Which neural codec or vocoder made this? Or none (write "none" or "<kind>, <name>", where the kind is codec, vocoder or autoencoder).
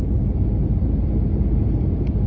vocoder, BigVGAN v2